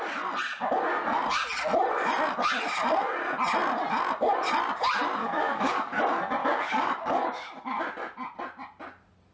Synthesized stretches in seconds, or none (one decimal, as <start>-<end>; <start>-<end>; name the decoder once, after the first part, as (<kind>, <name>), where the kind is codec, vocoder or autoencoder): 5.2-6.0 (codec, DAC); 6.4-7.8

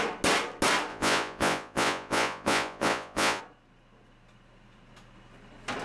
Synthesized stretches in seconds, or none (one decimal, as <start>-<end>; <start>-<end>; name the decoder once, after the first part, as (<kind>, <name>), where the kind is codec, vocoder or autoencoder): 0.9-3.4 (vocoder, Vocos)

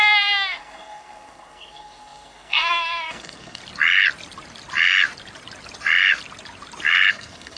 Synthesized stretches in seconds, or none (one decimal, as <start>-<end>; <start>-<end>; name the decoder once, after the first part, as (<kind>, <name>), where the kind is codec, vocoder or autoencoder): 0.0-3.6 (codec, SNAC); 7.1-7.6

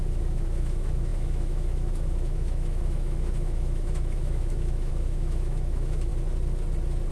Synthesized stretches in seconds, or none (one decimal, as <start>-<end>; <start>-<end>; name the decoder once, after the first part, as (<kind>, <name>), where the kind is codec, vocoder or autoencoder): 0.0-6.1 (autoencoder, DAC-VAE)

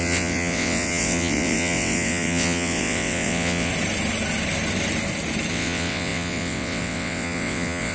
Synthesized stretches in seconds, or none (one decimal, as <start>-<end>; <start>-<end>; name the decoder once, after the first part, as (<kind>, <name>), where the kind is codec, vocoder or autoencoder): 0.0-3.7 (vocoder, WaveNeXt); 5.5-7.9

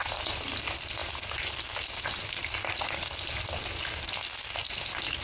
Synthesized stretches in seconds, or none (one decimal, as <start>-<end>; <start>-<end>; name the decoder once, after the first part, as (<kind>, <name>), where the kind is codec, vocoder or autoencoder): none

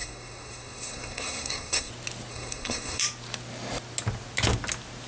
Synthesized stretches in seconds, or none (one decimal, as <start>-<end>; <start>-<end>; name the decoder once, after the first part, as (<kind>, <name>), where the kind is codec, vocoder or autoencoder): 0.0-1.9 (codec, SNAC); 2.3-3.0

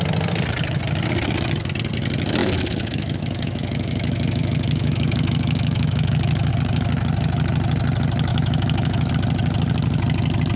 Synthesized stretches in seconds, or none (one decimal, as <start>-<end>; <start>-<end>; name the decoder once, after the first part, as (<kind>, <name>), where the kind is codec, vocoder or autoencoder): 2.4-6.5 (autoencoder, DAC-VAE); 8.3-9.1